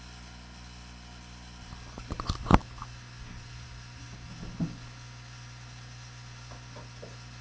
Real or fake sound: real